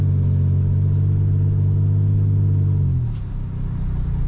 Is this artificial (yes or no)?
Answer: no